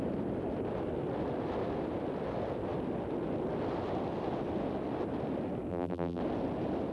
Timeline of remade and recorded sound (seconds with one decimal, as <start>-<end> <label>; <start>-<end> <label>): 0.0-5.7 recorded; 5.7-6.2 remade; 6.2-6.9 recorded

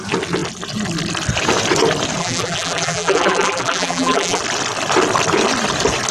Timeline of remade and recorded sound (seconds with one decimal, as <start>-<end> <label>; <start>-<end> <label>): 0.0-2.2 recorded; 2.2-4.4 remade; 4.4-6.1 recorded

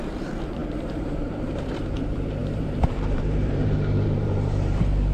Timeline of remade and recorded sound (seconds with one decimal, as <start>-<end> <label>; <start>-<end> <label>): 0.0-5.1 remade

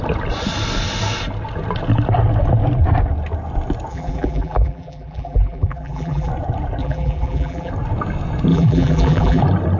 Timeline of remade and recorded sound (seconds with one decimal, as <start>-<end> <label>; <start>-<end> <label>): 0.0-3.9 recorded; 3.9-6.3 remade; 6.3-6.8 recorded; 6.8-7.7 remade; 7.7-8.5 recorded; 8.5-9.4 remade; 9.4-9.8 recorded